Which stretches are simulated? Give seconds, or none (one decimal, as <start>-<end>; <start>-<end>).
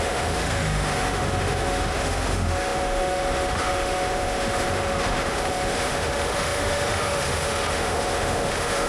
0.0-8.9